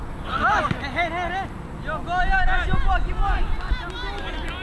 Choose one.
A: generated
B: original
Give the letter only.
B